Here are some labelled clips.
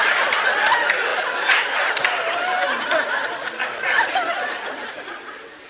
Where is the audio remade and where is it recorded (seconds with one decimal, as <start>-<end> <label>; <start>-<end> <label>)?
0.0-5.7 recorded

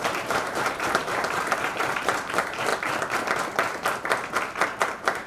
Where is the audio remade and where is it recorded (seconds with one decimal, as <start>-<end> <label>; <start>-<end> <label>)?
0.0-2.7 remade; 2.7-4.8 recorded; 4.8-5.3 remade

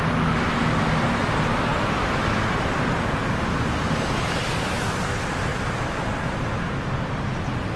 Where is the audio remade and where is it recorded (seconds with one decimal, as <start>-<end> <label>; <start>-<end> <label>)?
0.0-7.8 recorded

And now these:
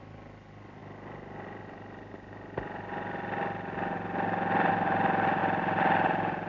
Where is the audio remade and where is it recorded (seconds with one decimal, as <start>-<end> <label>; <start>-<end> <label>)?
0.0-5.4 recorded; 5.4-6.5 remade

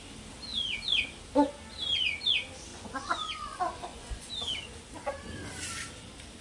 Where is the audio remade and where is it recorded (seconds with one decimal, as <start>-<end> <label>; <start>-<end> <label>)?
0.0-2.7 recorded; 2.7-4.3 remade; 4.3-6.4 recorded

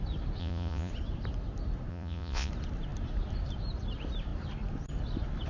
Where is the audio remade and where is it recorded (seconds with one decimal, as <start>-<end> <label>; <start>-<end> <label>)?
0.0-0.4 recorded; 0.4-0.9 remade; 0.9-1.9 recorded; 1.9-2.5 remade; 2.5-5.5 recorded

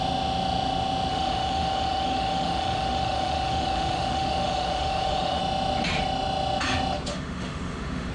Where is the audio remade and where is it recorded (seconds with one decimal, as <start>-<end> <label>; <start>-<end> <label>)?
0.0-1.1 recorded; 1.1-5.4 remade; 5.4-7.1 recorded; 7.1-8.1 remade